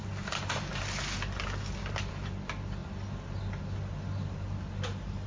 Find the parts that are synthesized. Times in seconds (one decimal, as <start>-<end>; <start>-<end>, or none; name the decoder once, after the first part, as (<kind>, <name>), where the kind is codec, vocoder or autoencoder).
none